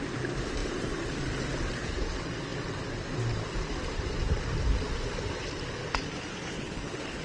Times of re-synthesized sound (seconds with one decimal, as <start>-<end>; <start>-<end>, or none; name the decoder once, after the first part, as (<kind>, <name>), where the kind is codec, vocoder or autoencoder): 6.4-7.2 (codec, HILCodec)